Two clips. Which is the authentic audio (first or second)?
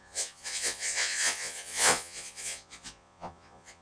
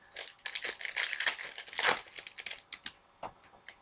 second